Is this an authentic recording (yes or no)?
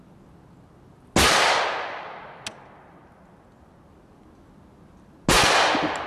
yes